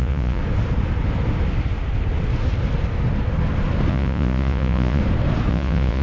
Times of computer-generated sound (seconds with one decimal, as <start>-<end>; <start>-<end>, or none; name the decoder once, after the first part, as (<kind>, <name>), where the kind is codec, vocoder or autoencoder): 0.0-0.4 (vocoder, Vocos); 3.9-5.0; 5.5-6.0